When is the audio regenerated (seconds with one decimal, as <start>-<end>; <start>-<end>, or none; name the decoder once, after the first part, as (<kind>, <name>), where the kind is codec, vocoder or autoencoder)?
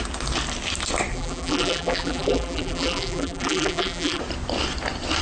1.1-4.2 (vocoder, BigVGAN v2)